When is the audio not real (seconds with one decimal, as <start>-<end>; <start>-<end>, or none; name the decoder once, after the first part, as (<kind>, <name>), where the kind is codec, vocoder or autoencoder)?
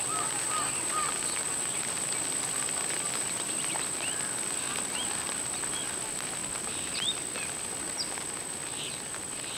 none